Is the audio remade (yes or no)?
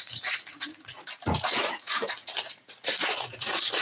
yes